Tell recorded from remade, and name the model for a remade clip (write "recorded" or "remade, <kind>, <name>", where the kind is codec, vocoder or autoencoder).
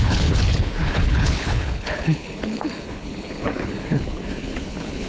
remade, codec, HILCodec